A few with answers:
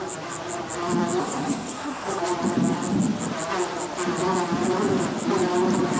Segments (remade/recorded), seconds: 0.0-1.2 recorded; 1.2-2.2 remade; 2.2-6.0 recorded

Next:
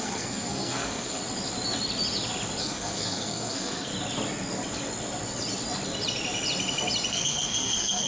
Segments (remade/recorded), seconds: 0.0-1.2 remade; 1.2-2.6 recorded; 2.6-3.9 remade; 3.9-7.1 recorded; 7.1-8.1 remade

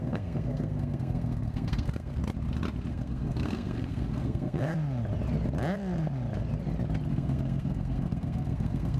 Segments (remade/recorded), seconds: 0.0-2.2 remade; 2.2-2.9 recorded; 2.9-4.7 remade; 4.7-7.1 recorded; 7.1-9.0 remade

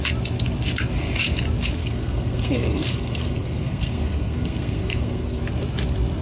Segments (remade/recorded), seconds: 0.0-1.8 recorded; 1.8-5.4 remade; 5.4-6.2 recorded

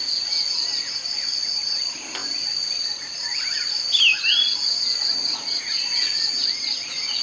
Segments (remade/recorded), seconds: 0.0-7.2 recorded

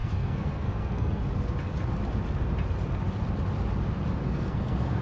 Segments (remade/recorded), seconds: 0.0-1.2 remade; 1.2-4.2 recorded; 4.2-5.0 remade

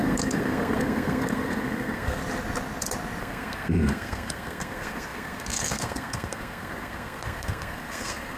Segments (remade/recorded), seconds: 0.0-2.2 remade; 2.2-3.2 recorded; 3.2-8.4 remade